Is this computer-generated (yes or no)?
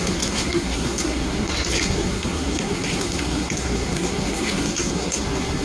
yes